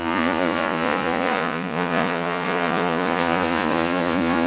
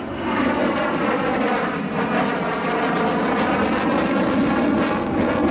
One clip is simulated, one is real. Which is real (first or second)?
second